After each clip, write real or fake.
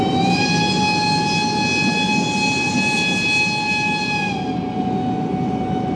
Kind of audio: real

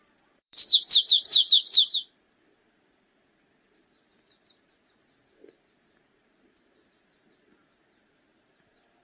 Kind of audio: fake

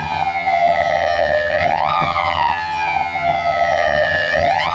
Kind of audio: fake